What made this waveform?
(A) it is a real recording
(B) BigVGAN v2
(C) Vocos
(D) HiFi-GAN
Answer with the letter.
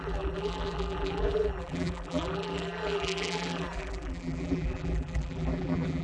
B